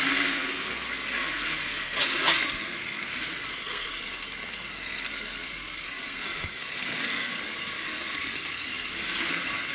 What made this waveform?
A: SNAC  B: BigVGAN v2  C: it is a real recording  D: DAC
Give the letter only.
A